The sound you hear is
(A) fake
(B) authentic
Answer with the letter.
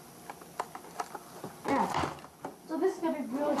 B